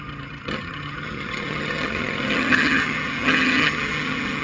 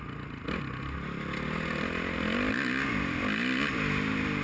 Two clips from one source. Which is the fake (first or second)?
first